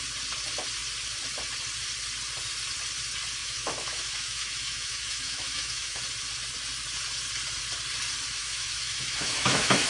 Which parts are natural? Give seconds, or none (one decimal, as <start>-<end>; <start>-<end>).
0.0-3.4; 6.0-8.4